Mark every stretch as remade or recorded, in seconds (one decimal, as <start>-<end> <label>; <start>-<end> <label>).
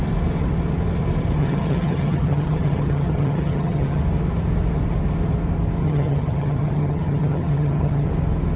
0.0-1.4 recorded; 1.4-4.0 remade; 4.0-5.8 recorded; 5.8-8.1 remade; 8.1-8.6 recorded